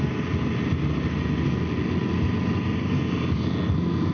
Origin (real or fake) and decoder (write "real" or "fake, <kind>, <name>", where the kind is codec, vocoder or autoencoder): real